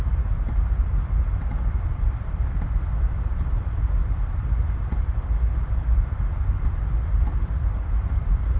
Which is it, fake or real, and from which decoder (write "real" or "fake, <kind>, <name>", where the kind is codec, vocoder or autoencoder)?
fake, vocoder, BigVGAN v2